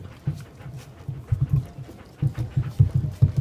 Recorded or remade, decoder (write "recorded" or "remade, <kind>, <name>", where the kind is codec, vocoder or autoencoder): recorded